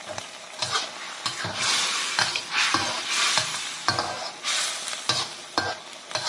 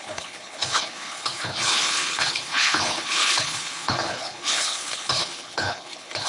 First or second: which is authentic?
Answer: first